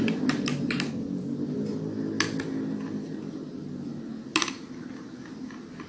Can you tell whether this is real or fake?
real